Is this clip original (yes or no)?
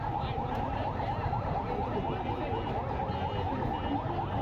yes